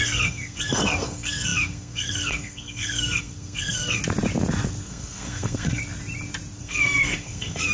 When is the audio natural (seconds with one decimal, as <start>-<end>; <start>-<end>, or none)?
4.0-4.8; 5.8-6.6

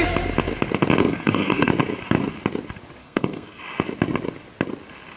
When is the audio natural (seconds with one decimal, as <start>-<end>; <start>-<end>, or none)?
0.0-1.0; 1.7-3.0; 3.6-5.2